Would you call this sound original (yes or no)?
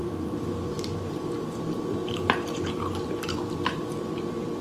no